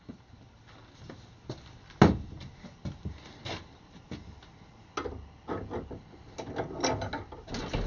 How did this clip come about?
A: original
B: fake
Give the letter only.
A